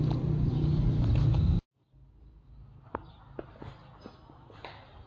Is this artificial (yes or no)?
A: no